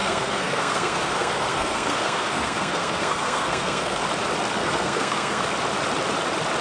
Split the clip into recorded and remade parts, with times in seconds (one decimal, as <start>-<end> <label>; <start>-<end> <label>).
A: 0.0-4.0 remade; 4.0-4.6 recorded; 4.6-5.4 remade; 5.4-6.6 recorded